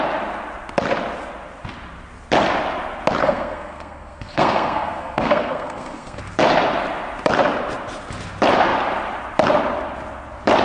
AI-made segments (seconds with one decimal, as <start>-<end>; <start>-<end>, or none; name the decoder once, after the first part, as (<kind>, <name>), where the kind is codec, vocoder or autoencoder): 3.2-6.2 (codec, SNAC)